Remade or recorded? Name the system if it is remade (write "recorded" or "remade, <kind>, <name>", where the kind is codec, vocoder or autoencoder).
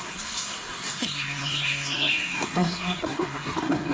remade, codec, SNAC